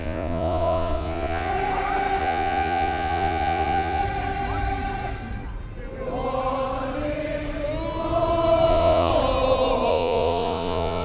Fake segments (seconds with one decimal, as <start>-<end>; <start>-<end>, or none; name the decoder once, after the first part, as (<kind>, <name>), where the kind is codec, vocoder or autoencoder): 0.0-1.5 (vocoder, Vocos); 2.2-4.0; 8.7-9.1; 9.9-11.0